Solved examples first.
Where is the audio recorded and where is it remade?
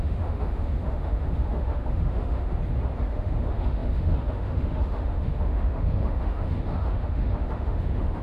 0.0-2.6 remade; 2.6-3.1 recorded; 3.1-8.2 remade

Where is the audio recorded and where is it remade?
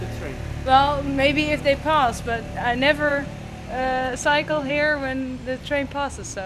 0.0-3.1 recorded; 3.1-4.7 remade; 4.7-6.5 recorded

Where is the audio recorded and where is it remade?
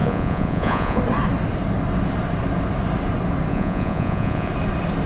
0.0-1.0 remade; 1.0-3.5 recorded; 3.5-4.5 remade; 4.5-5.1 recorded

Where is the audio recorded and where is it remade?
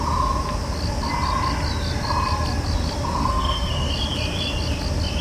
0.0-3.2 recorded; 3.2-3.9 remade; 3.9-5.2 recorded